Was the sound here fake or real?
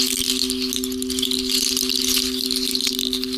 real